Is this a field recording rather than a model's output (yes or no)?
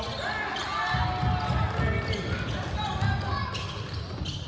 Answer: yes